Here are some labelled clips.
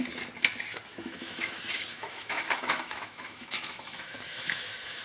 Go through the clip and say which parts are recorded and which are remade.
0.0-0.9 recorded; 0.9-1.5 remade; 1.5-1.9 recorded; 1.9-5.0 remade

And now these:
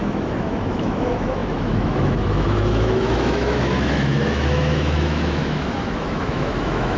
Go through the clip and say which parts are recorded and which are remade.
0.0-7.0 remade

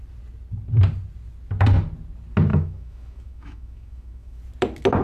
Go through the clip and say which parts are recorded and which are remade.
0.0-2.5 recorded; 2.5-4.4 remade; 4.4-5.0 recorded

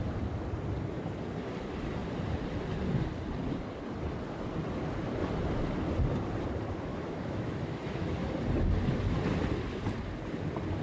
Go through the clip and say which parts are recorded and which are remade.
0.0-6.9 recorded; 6.9-8.3 remade; 8.3-10.8 recorded